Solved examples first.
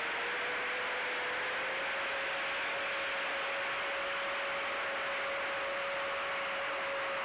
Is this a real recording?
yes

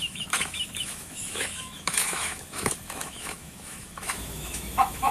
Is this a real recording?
no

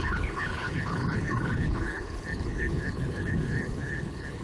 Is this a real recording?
no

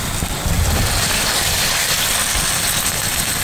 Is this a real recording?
yes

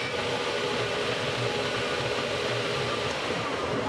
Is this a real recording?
yes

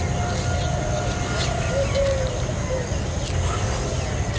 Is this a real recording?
yes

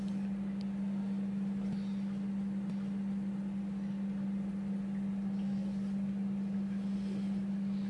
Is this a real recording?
yes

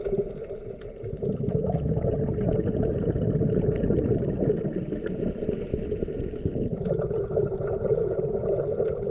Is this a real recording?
yes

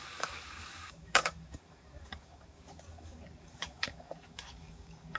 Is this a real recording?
no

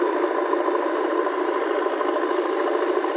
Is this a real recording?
yes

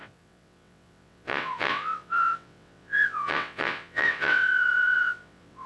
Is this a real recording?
no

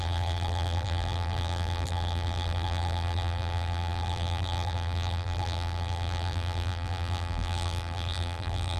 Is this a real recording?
no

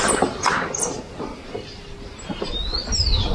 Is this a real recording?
yes